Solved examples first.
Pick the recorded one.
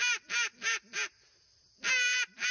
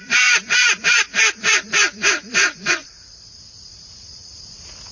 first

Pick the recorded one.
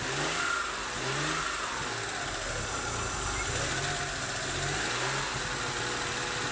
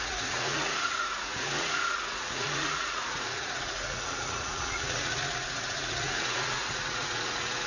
first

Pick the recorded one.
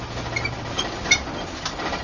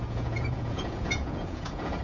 first